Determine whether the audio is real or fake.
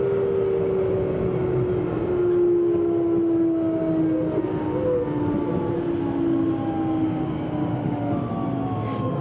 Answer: real